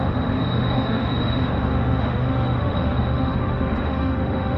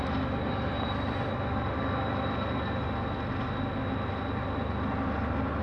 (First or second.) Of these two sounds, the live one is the second